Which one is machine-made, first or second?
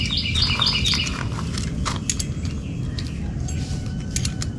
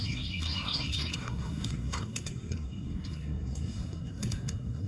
second